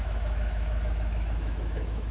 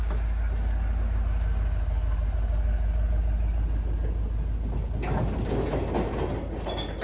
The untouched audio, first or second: second